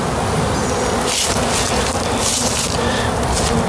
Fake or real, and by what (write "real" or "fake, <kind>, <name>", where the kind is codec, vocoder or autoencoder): real